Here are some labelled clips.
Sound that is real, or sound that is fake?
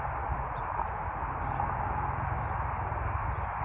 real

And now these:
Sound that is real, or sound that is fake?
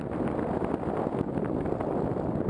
real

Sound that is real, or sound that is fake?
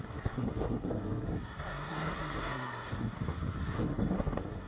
fake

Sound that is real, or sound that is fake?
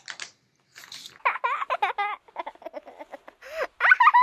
real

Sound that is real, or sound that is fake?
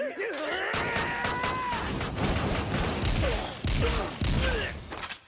real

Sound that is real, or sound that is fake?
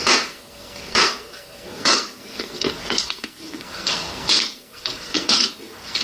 fake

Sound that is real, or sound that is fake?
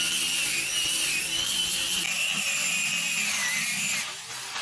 real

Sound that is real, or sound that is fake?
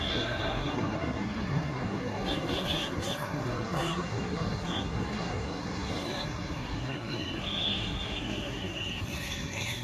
fake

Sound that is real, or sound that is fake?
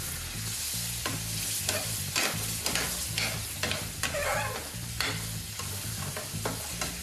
real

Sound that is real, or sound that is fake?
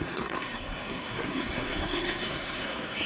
fake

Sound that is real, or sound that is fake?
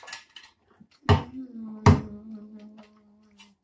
real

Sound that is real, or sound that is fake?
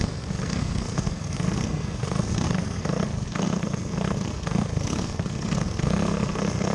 fake